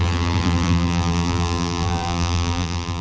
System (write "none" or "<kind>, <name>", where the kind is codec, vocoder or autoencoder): vocoder, BigVGAN v2